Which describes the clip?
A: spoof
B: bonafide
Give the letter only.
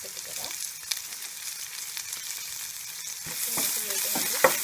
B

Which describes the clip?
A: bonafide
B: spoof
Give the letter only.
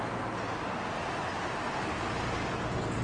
A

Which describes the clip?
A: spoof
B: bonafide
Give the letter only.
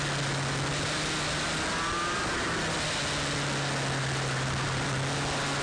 B